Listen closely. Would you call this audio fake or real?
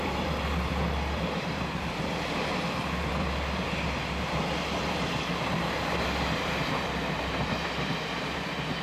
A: fake